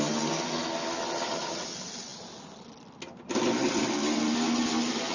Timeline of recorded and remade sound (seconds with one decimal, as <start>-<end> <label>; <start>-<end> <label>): 0.0-5.1 recorded